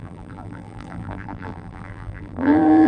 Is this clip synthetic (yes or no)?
yes